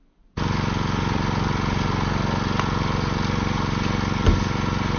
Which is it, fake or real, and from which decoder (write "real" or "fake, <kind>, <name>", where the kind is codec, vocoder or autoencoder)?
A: real